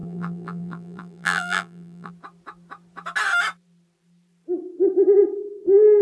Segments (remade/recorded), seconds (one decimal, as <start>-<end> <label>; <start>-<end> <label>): 0.0-2.1 remade; 2.1-6.0 recorded